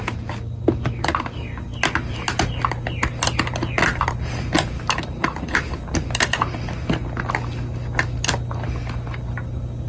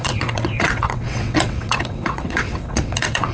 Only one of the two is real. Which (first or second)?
first